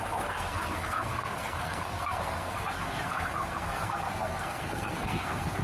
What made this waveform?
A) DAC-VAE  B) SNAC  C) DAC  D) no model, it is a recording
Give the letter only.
B